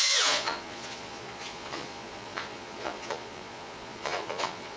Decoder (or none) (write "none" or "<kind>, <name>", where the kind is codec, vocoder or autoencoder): vocoder, Vocos